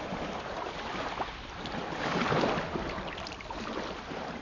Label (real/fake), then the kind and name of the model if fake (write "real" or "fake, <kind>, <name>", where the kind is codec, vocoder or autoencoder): real